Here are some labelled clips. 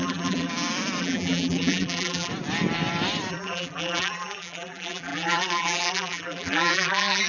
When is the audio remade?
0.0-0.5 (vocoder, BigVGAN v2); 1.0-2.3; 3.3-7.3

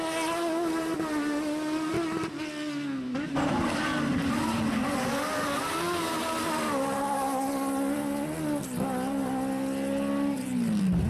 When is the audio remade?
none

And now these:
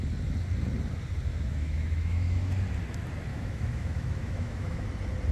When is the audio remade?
1.3-2.5 (autoencoder, DAC-VAE); 3.3-4.8

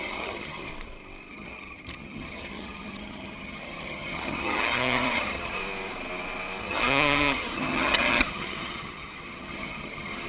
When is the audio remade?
0.0-0.7 (vocoder, HiFi-GAN); 1.3-5.6; 6.6-10.3

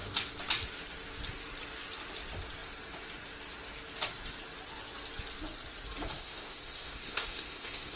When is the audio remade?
6.1-8.0 (codec, SNAC)

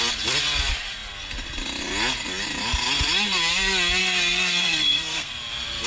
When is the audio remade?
4.0-5.3 (codec, SNAC)